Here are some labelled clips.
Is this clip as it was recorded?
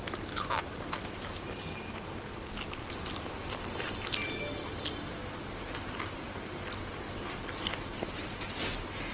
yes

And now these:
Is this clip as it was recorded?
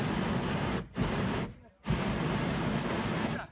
yes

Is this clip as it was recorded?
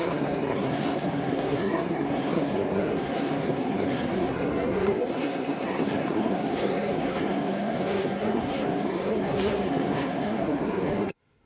no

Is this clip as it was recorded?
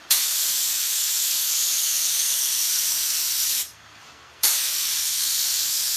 no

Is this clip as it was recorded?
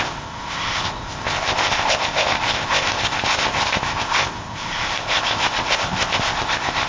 no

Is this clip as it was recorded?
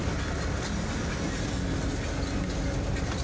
yes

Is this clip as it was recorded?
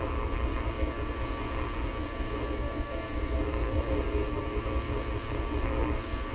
no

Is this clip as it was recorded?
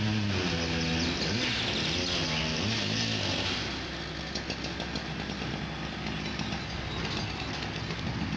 yes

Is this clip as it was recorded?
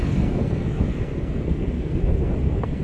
no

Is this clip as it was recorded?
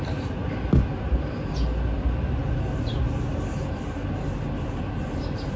yes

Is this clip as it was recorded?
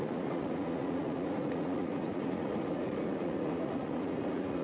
no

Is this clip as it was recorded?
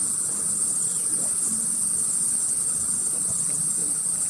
no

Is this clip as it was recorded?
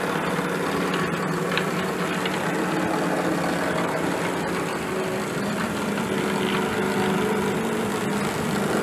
yes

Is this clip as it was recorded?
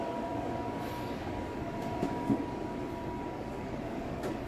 no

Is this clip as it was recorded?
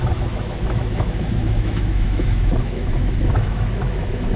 no